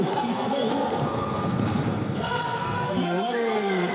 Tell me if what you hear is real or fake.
fake